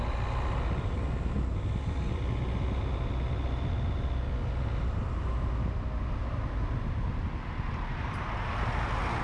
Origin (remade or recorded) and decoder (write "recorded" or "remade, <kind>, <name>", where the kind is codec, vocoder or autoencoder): recorded